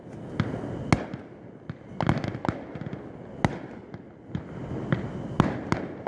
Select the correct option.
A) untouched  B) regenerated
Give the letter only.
A